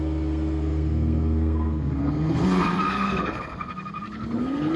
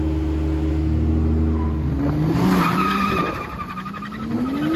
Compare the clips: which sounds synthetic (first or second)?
first